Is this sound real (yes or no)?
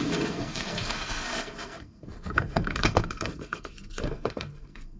no